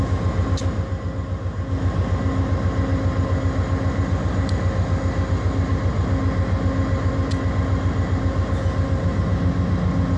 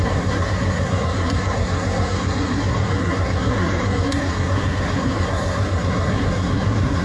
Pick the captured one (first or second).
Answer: first